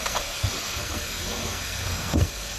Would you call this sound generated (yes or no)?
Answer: yes